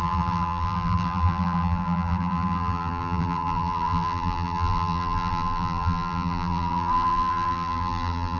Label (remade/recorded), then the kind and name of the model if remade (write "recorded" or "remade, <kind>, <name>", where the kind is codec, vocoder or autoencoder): remade, vocoder, BigVGAN v2